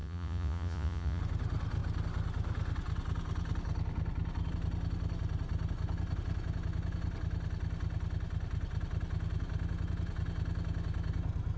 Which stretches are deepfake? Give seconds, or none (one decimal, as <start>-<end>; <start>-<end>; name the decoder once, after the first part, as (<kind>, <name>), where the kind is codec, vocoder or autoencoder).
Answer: 0.0-1.2 (vocoder, Vocos)